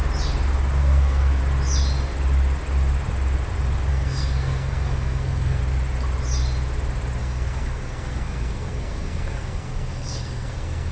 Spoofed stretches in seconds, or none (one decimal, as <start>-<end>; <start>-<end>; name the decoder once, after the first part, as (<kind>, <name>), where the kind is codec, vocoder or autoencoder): 0.8-1.4 (codec, SNAC); 3.9-5.6; 7.2-10.9